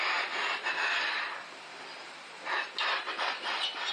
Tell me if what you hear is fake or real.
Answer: fake